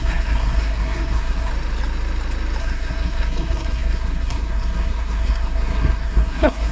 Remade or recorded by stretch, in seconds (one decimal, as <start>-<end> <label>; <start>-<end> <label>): 0.0-1.5 remade; 1.5-2.6 recorded; 2.6-6.7 remade